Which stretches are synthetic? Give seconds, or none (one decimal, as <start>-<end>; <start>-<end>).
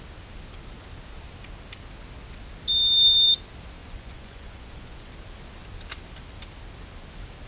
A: 3.8-5.1